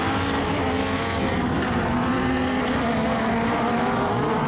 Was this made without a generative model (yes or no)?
yes